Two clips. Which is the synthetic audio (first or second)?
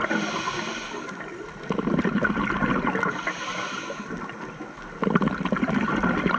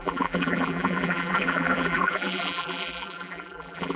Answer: second